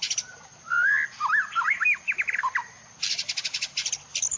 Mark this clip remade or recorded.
recorded